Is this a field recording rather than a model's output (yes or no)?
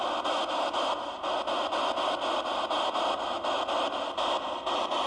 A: yes